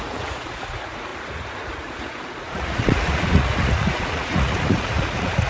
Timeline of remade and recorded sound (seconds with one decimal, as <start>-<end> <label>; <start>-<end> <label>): 0.0-5.5 remade